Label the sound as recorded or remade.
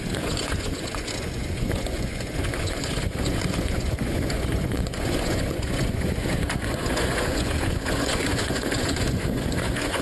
remade